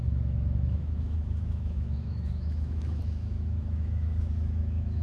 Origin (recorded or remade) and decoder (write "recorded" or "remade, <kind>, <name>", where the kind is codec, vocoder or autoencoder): remade, autoencoder, DAC-VAE